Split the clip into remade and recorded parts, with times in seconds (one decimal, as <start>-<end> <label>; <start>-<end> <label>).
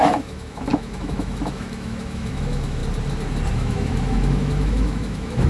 0.0-2.8 remade; 2.8-3.5 recorded; 3.5-5.5 remade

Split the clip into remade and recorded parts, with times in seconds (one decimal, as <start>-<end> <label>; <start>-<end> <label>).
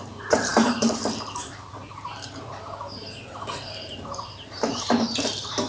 0.0-2.5 remade; 2.5-3.3 recorded; 3.3-5.7 remade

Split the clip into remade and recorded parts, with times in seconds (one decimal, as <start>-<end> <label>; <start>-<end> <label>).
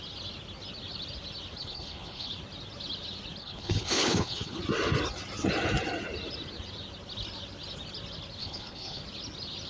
0.0-1.6 recorded; 1.6-2.3 remade; 2.3-3.4 recorded; 3.4-4.6 remade; 4.6-8.4 recorded; 8.4-9.0 remade; 9.0-9.7 recorded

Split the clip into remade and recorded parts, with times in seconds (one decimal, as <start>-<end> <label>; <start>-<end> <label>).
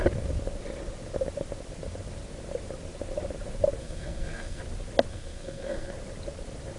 0.0-3.8 recorded; 3.8-4.6 remade; 4.6-5.1 recorded; 5.1-5.9 remade; 5.9-6.8 recorded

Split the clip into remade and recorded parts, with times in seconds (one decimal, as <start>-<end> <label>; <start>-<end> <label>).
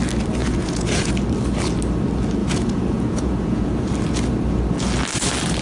0.0-0.4 recorded; 0.4-1.1 remade; 1.1-2.4 recorded; 2.4-3.9 remade; 3.9-5.6 recorded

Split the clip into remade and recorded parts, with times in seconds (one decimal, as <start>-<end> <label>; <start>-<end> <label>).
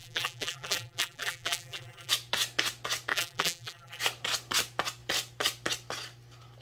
0.0-2.1 remade; 2.1-3.1 recorded; 3.1-4.0 remade; 4.0-6.6 recorded